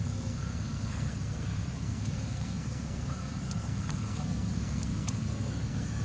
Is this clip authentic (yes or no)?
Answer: no